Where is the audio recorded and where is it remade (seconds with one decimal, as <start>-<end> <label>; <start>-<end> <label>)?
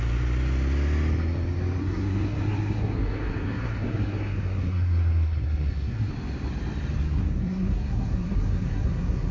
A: 0.0-1.8 recorded; 1.8-6.1 remade; 6.1-7.0 recorded; 7.0-9.3 remade